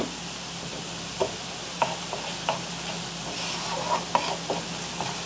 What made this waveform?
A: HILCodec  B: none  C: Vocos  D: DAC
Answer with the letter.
B